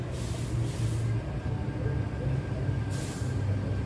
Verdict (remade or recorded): recorded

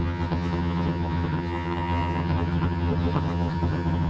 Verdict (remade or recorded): remade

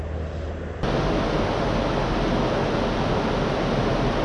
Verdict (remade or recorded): recorded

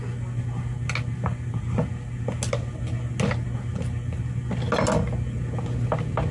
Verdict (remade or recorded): recorded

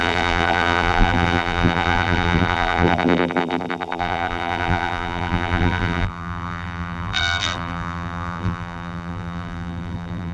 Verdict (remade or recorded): remade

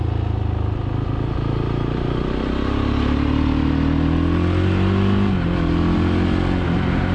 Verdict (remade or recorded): recorded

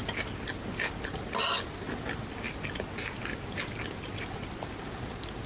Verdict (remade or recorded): recorded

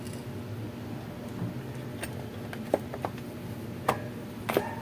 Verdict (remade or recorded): recorded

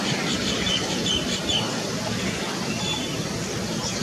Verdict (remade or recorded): recorded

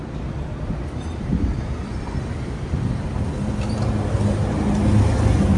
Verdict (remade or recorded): recorded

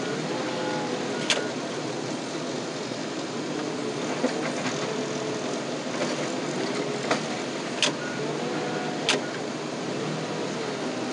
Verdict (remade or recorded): recorded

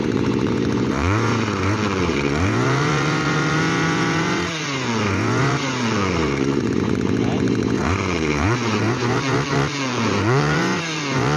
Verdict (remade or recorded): remade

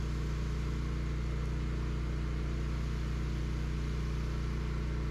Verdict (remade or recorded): recorded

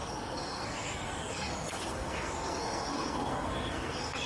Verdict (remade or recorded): remade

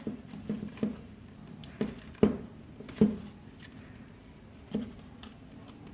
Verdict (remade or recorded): recorded